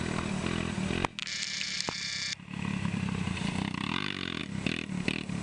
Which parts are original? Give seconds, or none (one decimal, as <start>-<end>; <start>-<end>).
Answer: 0.0-1.2; 4.4-5.4